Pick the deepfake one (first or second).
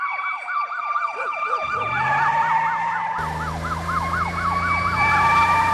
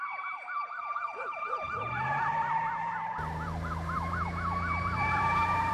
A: second